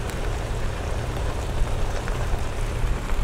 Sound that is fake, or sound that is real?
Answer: fake